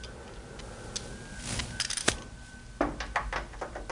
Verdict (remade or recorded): recorded